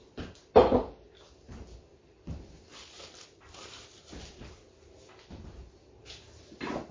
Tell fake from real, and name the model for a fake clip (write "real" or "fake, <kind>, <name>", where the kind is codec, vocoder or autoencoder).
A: real